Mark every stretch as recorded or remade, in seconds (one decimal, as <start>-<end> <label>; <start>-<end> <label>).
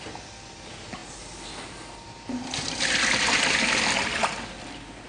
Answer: 0.0-5.1 recorded